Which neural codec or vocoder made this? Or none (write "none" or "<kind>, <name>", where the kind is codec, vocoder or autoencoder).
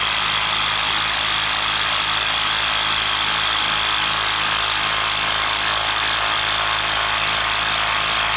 none